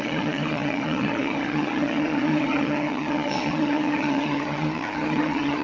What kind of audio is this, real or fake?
fake